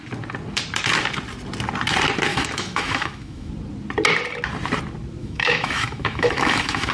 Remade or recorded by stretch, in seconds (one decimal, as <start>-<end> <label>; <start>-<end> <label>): 0.0-2.3 recorded; 2.3-3.5 remade; 3.5-5.2 recorded; 5.2-6.9 remade